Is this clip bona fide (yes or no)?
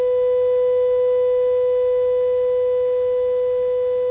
yes